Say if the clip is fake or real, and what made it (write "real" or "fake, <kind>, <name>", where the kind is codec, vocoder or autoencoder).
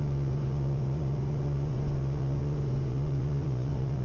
fake, vocoder, Vocos